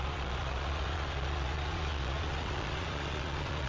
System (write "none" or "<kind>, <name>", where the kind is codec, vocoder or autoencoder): vocoder, Vocos